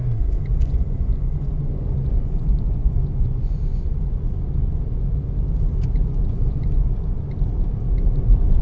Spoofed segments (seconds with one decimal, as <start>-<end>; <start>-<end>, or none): 0.5-4.8; 6.0-6.9